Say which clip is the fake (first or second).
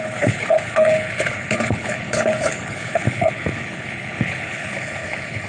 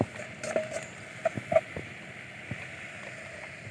first